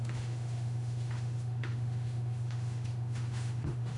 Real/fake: fake